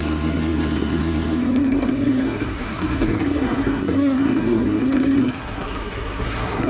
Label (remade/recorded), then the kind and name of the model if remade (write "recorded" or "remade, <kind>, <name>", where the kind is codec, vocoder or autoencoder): remade, codec, SNAC